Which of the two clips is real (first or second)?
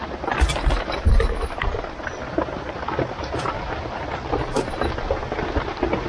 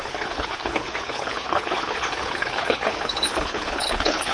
first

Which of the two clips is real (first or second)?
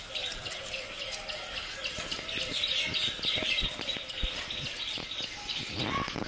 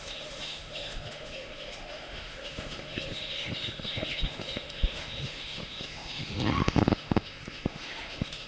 first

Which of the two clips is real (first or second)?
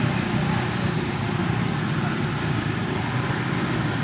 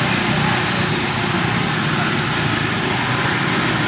second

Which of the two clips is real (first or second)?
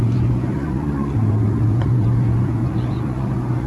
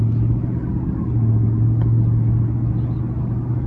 second